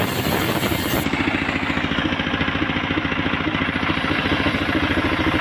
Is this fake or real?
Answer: real